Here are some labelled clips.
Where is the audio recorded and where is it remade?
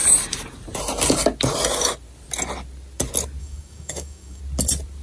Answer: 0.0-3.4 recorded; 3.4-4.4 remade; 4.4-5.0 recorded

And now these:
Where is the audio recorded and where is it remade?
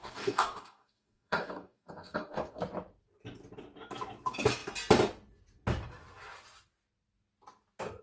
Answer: 0.0-2.6 remade; 2.6-8.0 recorded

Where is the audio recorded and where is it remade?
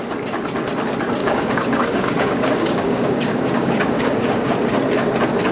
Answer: 0.0-1.2 recorded; 1.2-4.5 remade; 4.5-5.5 recorded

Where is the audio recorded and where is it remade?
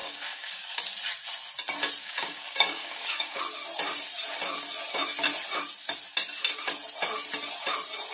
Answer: 0.0-0.8 remade; 0.8-2.0 recorded; 2.0-3.4 remade; 3.4-8.1 recorded